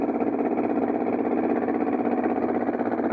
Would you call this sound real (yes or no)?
yes